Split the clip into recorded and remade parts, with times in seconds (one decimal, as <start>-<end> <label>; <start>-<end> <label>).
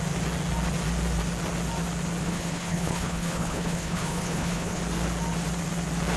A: 0.0-2.2 recorded; 2.2-4.8 remade; 4.8-6.2 recorded